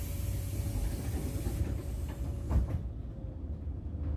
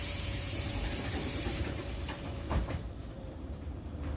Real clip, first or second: first